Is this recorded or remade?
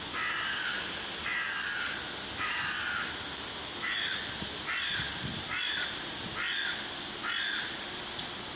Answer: recorded